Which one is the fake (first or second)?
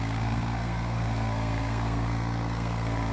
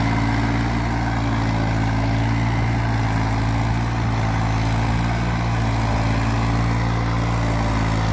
first